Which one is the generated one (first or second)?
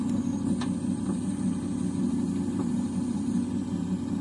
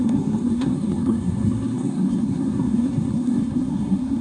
second